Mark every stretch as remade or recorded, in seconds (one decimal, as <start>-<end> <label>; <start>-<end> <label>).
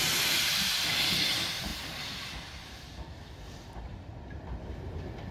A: 0.0-5.3 recorded